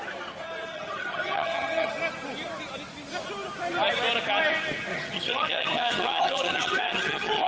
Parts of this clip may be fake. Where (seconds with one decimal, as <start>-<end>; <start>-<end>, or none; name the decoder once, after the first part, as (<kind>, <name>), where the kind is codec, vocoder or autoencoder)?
0.7-1.9 (vocoder, HiFi-GAN); 4.9-7.5